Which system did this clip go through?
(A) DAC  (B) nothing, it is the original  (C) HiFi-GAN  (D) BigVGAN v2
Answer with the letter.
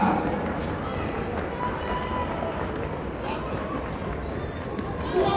B